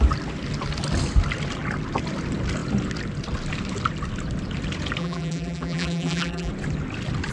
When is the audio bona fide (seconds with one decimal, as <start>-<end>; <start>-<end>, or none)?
0.0-5.0; 6.5-7.3